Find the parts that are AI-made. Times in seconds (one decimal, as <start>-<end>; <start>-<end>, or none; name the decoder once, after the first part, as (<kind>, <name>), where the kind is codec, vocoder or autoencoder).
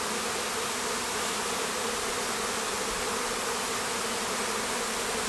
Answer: none